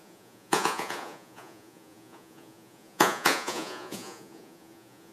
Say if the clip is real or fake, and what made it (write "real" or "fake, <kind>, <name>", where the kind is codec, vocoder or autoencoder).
fake, vocoder, Vocos